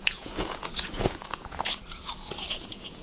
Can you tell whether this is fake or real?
fake